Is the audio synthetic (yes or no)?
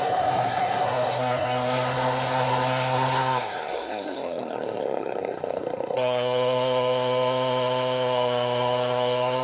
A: yes